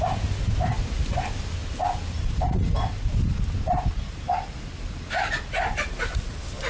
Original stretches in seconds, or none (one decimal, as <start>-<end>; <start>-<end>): 0.0-6.7